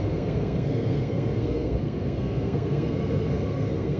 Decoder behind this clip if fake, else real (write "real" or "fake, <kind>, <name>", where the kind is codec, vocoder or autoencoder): fake, codec, SNAC